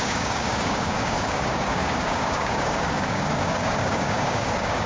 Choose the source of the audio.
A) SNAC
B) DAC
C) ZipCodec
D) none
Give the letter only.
B